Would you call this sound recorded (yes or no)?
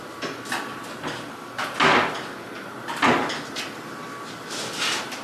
yes